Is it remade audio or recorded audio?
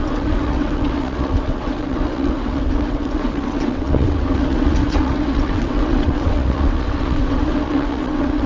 remade